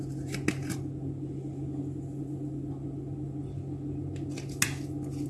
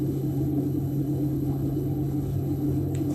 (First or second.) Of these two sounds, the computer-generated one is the second